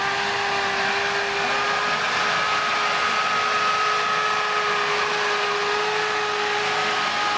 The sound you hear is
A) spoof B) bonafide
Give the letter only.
B